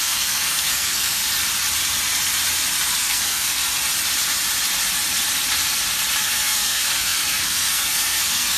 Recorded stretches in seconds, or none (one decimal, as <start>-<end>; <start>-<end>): 1.2-3.0; 3.6-6.2